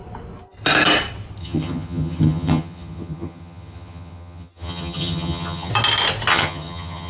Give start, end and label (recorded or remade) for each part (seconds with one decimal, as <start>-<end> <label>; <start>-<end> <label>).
0.0-1.4 recorded; 1.4-5.7 remade; 5.7-6.3 recorded; 6.3-7.1 remade